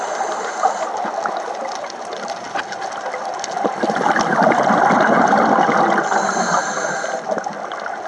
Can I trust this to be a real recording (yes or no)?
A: yes